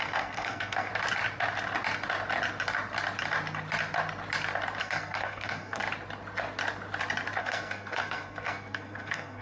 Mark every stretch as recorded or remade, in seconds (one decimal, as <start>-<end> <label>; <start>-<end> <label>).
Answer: 0.0-0.9 remade; 0.9-4.8 recorded; 4.8-5.8 remade; 5.8-7.4 recorded; 7.4-9.4 remade